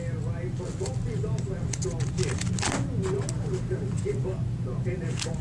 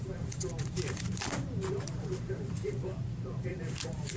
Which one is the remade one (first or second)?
second